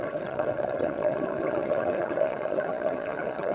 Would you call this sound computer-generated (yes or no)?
yes